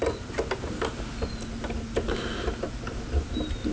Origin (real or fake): real